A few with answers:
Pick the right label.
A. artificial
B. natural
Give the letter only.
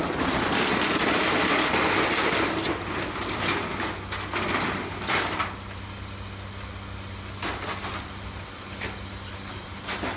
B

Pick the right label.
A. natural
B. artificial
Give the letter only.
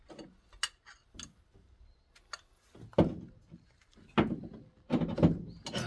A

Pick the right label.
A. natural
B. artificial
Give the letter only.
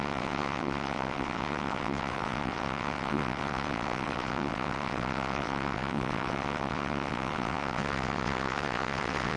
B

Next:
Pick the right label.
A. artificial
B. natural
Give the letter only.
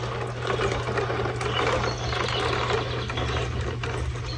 B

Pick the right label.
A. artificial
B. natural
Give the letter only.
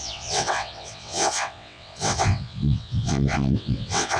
A